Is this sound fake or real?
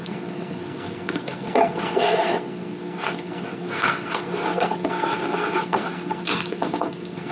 fake